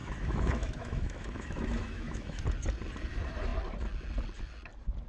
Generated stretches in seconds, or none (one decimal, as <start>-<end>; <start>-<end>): 0.0-2.4